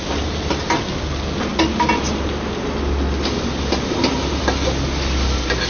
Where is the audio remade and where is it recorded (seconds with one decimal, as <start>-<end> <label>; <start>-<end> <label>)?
0.0-5.7 recorded